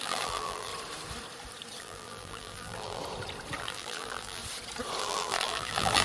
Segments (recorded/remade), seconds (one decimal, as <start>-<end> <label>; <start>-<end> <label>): 0.0-0.7 remade; 0.7-1.8 recorded; 1.8-3.0 remade; 3.0-3.6 recorded; 3.6-4.4 remade; 4.4-5.0 recorded; 5.0-6.0 remade

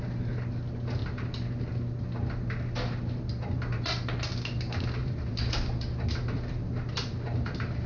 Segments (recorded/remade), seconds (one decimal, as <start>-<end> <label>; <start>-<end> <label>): 0.0-5.0 recorded; 5.0-7.9 remade

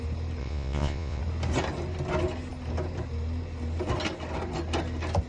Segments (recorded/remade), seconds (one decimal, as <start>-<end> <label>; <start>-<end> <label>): 0.0-0.4 recorded; 0.4-1.2 remade; 1.2-5.3 recorded

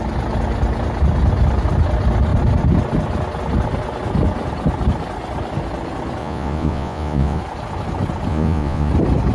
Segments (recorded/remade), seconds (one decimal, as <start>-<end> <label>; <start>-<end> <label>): 0.0-6.2 recorded; 6.2-7.4 remade; 7.4-8.3 recorded; 8.3-8.9 remade; 8.9-9.3 recorded

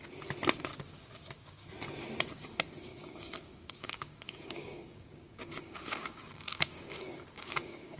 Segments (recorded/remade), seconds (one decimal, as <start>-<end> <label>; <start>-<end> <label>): 0.0-0.7 recorded; 0.7-1.7 remade; 1.7-2.9 recorded; 2.9-8.0 remade

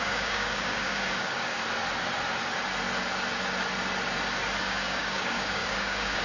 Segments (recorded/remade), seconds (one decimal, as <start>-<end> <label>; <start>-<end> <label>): 0.0-1.6 remade; 1.6-4.6 recorded; 4.6-6.2 remade